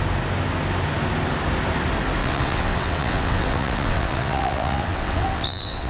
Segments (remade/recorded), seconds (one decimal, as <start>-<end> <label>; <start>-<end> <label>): 0.0-2.2 recorded; 2.2-5.9 remade